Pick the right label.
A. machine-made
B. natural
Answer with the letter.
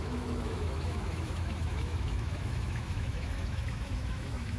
A